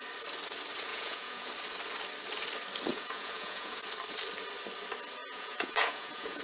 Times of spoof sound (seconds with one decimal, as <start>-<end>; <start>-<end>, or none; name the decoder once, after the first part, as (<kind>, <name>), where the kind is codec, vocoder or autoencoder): 0.9-1.5 (vocoder, Vocos); 2.9-3.8; 5.2-6.4